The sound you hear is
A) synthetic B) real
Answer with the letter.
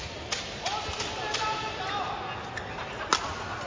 B